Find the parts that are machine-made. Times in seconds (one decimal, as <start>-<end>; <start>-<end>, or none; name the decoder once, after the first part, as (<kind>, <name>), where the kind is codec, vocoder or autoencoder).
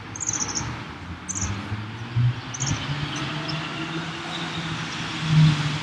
none